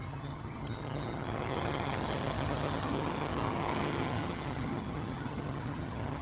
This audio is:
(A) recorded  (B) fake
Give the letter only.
B